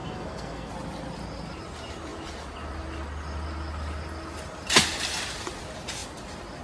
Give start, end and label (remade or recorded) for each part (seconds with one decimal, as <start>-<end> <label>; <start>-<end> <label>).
0.0-0.7 remade; 0.7-6.6 recorded